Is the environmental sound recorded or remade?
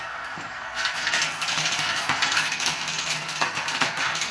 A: remade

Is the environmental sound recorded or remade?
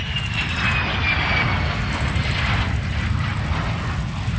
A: recorded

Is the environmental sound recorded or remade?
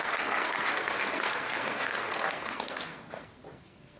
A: remade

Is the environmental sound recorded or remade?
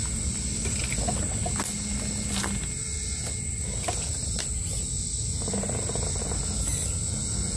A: recorded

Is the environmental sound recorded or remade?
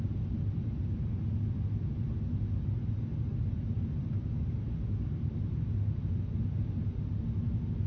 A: recorded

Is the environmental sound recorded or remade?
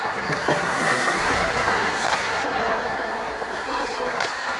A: remade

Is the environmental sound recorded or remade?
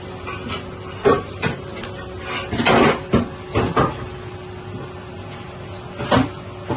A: recorded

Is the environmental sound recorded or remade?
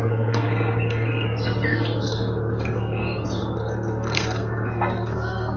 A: remade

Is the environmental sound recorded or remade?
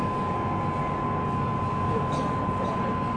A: recorded